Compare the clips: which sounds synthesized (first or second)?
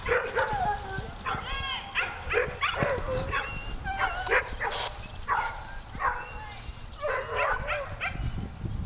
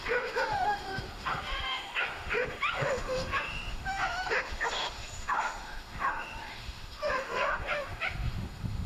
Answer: second